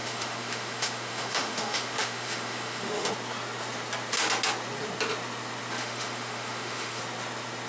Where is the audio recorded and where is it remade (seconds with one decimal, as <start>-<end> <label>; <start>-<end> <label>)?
0.0-3.1 remade; 3.1-5.8 recorded; 5.8-7.0 remade; 7.0-7.7 recorded